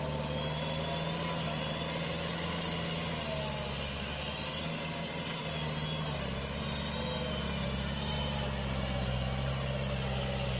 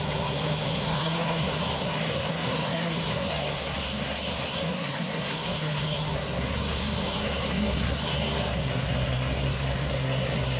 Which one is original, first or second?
first